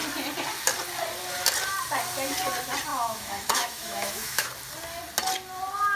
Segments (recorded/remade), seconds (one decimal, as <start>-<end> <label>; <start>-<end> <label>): 0.0-2.9 recorded; 2.9-4.5 remade; 4.5-6.0 recorded